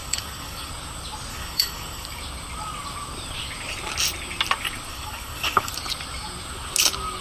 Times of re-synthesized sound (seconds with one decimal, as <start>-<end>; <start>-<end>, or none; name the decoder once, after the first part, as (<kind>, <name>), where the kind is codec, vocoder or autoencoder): 0.0-0.7 (codec, DAC); 1.3-2.2; 4.9-5.7